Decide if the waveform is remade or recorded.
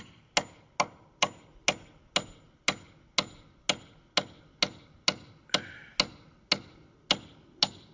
recorded